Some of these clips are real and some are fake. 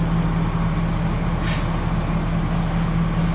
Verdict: real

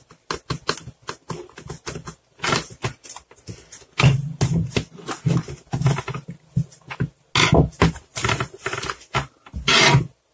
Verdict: real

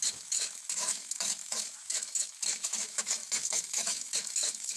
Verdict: fake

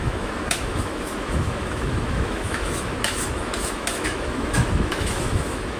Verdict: fake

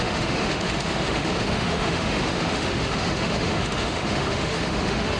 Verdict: fake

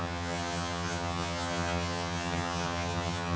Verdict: fake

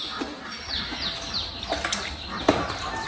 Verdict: real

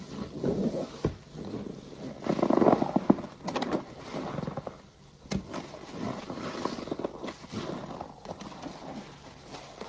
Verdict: real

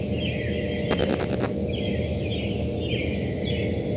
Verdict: real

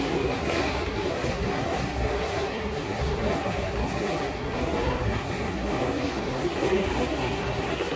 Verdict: fake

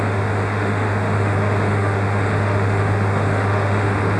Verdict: fake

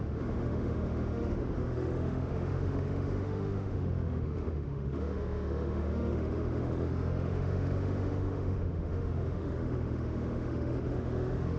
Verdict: fake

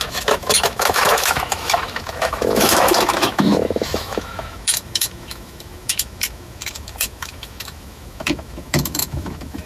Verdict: fake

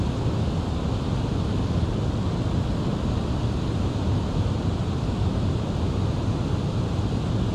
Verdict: real